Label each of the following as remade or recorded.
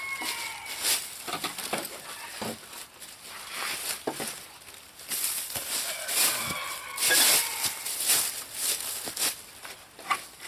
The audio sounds recorded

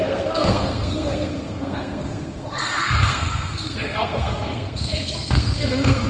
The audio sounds remade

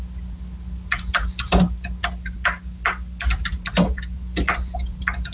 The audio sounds recorded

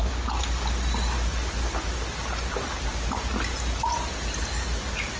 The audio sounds recorded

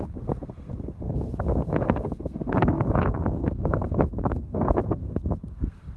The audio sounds remade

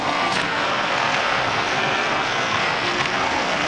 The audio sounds remade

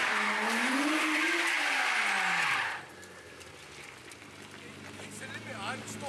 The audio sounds recorded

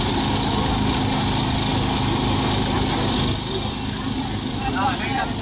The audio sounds recorded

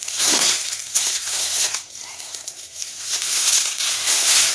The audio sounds remade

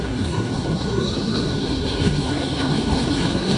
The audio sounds remade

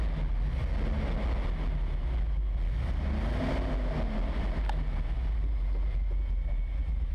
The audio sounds recorded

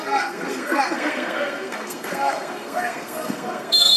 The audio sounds remade